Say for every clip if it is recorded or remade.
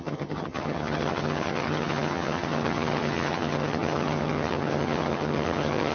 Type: remade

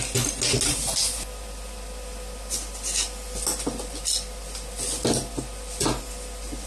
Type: recorded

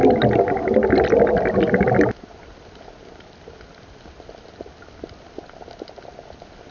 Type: recorded